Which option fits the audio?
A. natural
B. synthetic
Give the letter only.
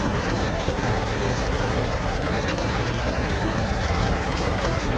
B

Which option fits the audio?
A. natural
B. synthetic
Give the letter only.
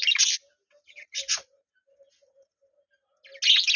A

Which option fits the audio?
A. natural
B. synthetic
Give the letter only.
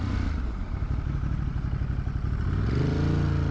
A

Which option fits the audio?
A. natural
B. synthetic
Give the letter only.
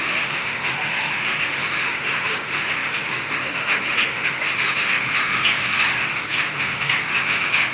B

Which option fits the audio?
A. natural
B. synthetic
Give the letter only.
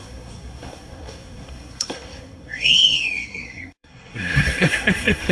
B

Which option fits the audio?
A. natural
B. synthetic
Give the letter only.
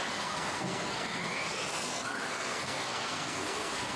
B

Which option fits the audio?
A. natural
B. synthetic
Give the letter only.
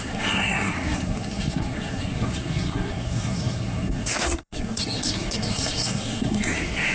B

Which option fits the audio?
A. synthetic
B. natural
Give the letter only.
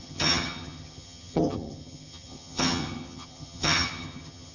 A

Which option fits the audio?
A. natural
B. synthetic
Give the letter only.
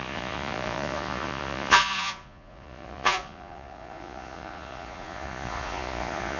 B